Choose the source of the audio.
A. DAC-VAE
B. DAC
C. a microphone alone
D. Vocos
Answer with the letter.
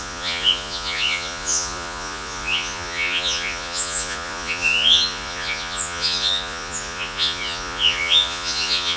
D